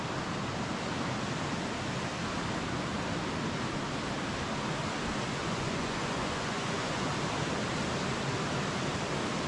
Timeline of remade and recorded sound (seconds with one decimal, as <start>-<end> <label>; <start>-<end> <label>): 0.0-5.4 recorded; 5.4-7.1 remade; 7.1-9.5 recorded